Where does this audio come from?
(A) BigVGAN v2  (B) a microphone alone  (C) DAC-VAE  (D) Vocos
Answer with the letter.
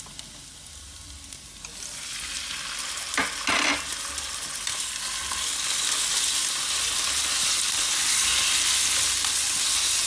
B